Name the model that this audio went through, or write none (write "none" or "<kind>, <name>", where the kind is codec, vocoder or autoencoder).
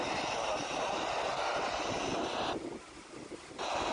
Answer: none